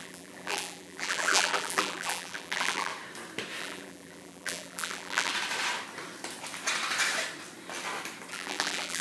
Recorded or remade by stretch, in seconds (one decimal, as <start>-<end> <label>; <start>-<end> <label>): 0.0-2.9 remade; 2.9-3.6 recorded; 3.6-5.3 remade; 5.3-8.3 recorded; 8.3-9.0 remade